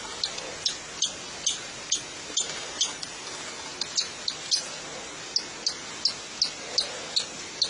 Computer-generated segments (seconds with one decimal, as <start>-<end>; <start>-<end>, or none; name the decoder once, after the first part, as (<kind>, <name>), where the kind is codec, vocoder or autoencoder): none